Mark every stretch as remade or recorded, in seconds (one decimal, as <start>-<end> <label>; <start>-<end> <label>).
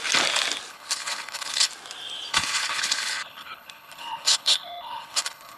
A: 0.0-0.7 recorded; 0.7-1.7 remade; 1.7-2.3 recorded; 2.3-5.6 remade